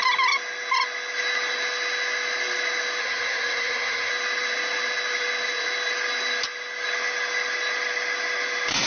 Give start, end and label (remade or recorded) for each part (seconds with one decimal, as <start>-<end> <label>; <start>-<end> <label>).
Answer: 0.0-3.0 recorded; 3.0-4.1 remade; 4.1-8.9 recorded